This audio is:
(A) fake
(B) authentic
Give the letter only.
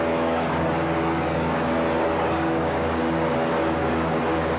A